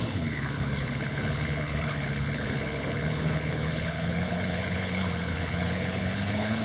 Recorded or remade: remade